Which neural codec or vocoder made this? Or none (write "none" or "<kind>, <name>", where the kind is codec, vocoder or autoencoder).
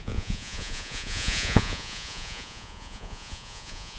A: vocoder, Vocos